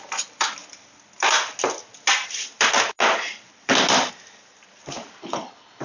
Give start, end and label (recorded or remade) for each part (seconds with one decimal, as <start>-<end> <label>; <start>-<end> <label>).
0.0-5.2 recorded; 5.2-5.8 remade